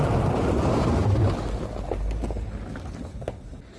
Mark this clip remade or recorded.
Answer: recorded